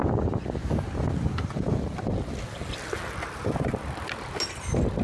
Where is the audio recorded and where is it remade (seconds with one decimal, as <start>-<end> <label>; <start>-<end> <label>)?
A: 0.0-5.0 recorded